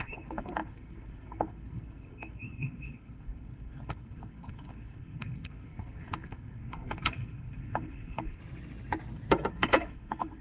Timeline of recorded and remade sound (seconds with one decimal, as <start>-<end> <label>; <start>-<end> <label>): 0.0-8.4 remade; 8.4-9.5 recorded; 9.5-10.4 remade